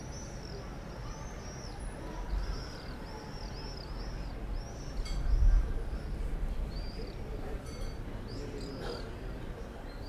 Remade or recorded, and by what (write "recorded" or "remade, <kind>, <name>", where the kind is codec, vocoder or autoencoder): recorded